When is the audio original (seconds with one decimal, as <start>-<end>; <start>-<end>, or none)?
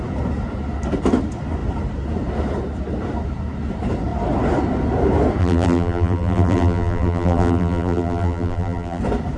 0.0-5.4; 9.0-9.4